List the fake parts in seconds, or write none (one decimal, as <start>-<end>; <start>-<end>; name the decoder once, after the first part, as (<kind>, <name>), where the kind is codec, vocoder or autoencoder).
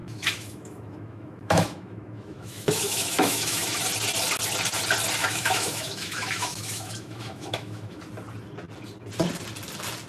0.0-3.8 (autoencoder, DAC-VAE); 5.2-8.0